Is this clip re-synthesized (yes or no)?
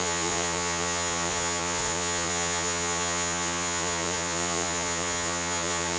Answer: yes